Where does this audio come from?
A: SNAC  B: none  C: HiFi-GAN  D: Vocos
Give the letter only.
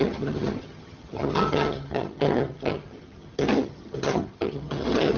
C